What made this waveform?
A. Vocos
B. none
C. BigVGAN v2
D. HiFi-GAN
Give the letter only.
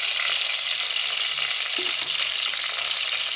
B